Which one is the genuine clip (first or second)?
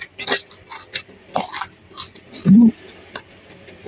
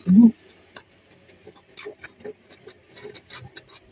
second